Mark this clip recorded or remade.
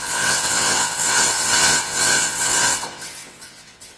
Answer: remade